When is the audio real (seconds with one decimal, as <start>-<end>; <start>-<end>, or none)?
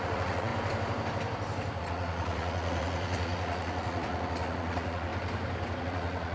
0.5-1.8; 5.1-5.8